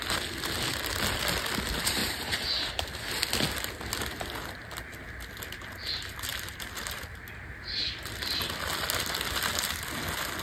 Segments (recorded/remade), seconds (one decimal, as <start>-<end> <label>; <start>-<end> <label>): 0.0-2.0 recorded; 2.0-3.1 remade; 3.1-10.4 recorded

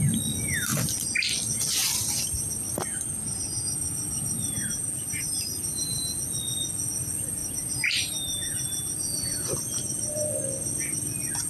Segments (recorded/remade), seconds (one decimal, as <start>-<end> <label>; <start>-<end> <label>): 0.0-1.8 recorded; 1.8-6.1 remade; 6.1-7.4 recorded; 7.4-10.3 remade; 10.3-11.5 recorded

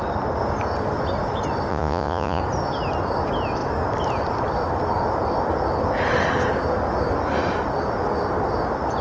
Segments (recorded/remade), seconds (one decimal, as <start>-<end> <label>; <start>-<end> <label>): 0.0-1.7 recorded; 1.7-2.4 remade; 2.4-9.0 recorded

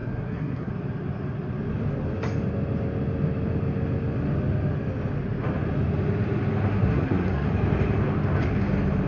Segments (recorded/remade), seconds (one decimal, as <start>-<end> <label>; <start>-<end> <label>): 0.0-0.7 remade; 0.7-6.7 recorded; 6.7-7.5 remade; 7.5-9.1 recorded

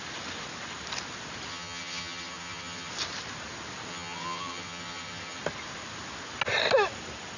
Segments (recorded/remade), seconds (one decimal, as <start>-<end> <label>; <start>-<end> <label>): 0.0-1.5 recorded; 1.5-2.9 remade; 2.9-3.9 recorded; 3.9-5.4 remade; 5.4-7.4 recorded